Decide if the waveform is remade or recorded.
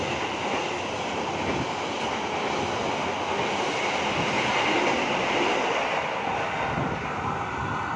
recorded